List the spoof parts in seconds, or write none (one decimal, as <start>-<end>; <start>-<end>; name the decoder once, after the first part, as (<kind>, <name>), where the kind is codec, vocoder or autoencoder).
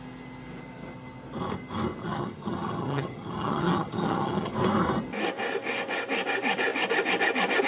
2.0-4.5 (vocoder, HiFi-GAN)